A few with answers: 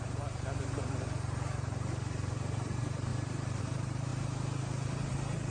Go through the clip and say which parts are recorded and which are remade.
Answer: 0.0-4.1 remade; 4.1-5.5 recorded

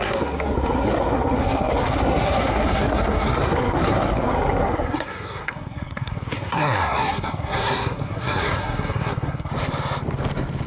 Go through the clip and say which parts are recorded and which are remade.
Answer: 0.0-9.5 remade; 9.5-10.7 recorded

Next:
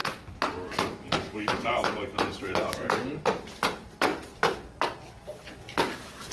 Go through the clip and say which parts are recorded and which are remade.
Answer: 0.0-0.9 recorded; 0.9-4.1 remade; 4.1-6.3 recorded

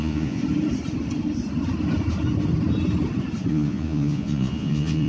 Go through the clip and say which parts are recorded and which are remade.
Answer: 0.0-0.4 remade; 0.4-3.5 recorded; 3.5-5.1 remade